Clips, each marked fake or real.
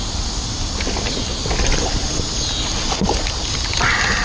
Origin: real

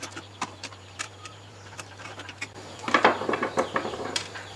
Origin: fake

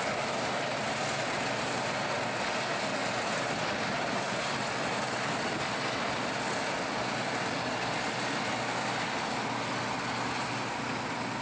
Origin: real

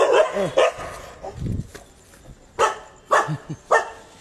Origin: real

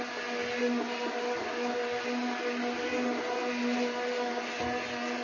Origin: real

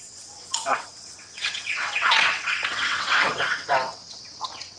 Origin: fake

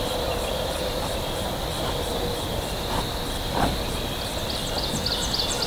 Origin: real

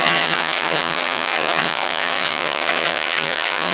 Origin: fake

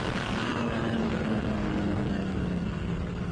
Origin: fake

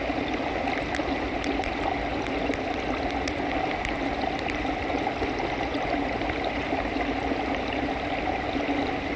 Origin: real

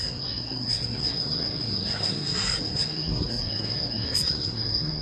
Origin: fake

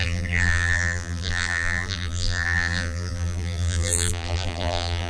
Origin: fake